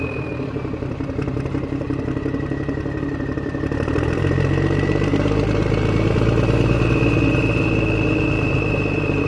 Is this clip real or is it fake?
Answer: fake